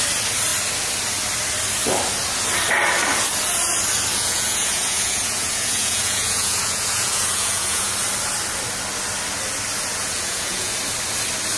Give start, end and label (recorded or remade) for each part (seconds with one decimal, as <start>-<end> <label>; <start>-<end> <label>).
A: 0.0-4.1 recorded; 4.1-7.9 remade; 7.9-9.9 recorded; 9.9-10.7 remade; 10.7-11.6 recorded